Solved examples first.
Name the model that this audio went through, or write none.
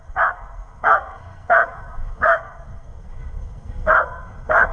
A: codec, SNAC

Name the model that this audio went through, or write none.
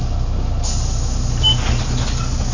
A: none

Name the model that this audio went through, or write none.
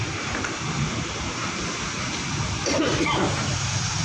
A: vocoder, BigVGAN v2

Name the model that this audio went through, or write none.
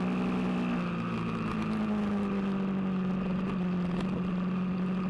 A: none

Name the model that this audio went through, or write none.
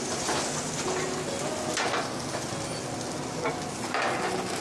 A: none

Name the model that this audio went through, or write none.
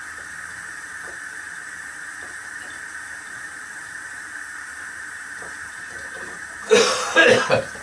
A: vocoder, BigVGAN v2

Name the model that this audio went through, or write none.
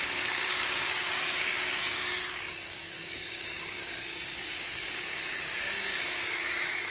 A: codec, DAC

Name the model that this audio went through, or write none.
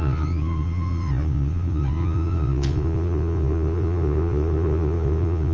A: vocoder, Vocos